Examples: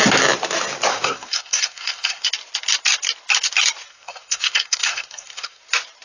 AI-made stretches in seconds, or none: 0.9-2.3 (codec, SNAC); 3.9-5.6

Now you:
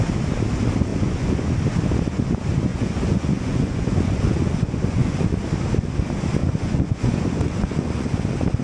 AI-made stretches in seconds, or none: 0.9-1.5 (vocoder, Vocos); 2.7-5.2; 6.4-8.2

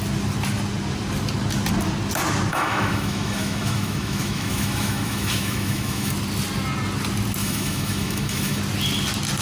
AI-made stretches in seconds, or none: 2.5-6.1 (autoencoder, DAC-VAE); 7.4-8.6